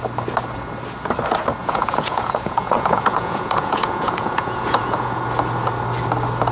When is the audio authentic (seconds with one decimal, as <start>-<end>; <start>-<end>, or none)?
0.0-1.6; 5.2-6.5